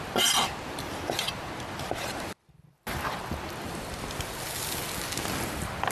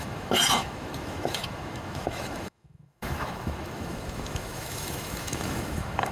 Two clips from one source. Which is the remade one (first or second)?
second